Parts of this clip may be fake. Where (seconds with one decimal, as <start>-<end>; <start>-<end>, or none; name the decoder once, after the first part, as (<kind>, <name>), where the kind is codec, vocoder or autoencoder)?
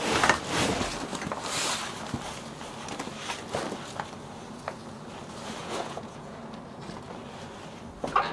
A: 5.6-6.4 (vocoder, Vocos)